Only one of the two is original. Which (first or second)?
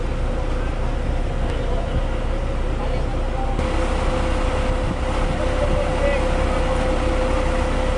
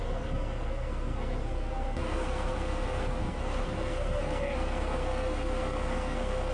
first